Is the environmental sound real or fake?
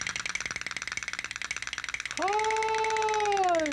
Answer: real